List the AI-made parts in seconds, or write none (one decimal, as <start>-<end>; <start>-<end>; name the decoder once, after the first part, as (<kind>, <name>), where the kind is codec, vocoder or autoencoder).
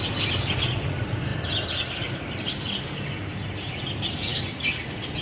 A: none